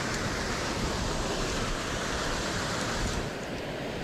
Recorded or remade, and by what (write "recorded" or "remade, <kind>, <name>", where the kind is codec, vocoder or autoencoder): recorded